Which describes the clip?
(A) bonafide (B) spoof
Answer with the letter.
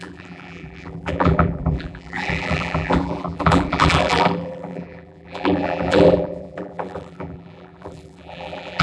B